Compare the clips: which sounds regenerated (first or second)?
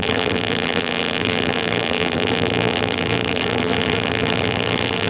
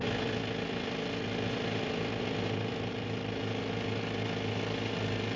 first